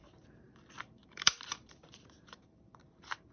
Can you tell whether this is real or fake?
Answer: fake